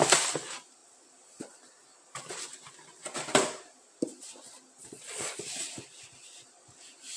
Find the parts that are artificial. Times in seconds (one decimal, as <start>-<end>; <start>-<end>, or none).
4.8-5.4